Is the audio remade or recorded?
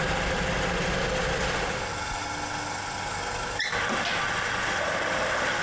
recorded